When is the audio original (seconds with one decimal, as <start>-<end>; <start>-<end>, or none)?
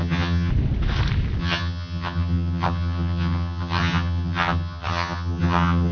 0.5-1.4